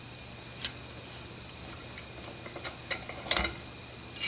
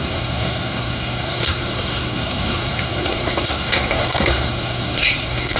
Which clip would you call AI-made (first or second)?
second